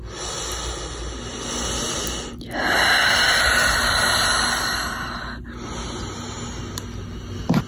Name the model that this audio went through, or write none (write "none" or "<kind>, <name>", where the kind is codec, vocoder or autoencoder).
none